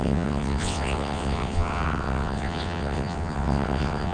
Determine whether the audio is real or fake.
fake